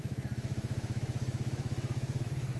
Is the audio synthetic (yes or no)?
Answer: yes